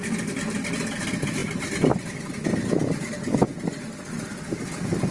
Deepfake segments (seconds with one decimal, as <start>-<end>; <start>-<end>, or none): none